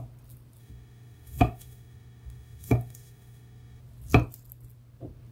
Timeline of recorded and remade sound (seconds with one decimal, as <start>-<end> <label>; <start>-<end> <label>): 0.0-0.6 recorded; 0.6-3.8 remade; 3.8-5.3 recorded